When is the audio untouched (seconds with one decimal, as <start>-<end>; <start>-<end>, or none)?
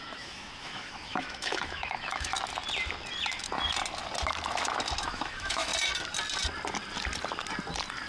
2.3-5.0; 5.7-8.1